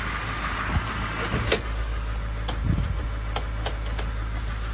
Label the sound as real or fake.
real